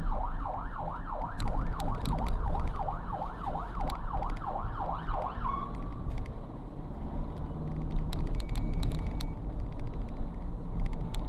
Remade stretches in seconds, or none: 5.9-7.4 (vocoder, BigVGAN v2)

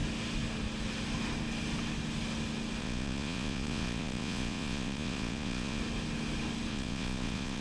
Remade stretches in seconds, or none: 2.8-5.8 (vocoder, Vocos); 6.7-7.6

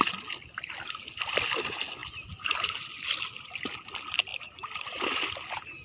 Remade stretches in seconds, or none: none

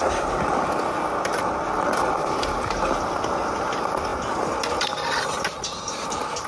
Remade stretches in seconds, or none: none

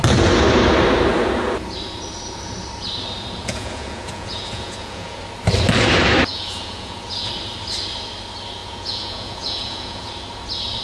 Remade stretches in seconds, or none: 3.4-5.2 (vocoder, Vocos); 6.3-7.3; 8.6-10.1

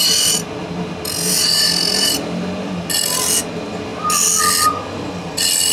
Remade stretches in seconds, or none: none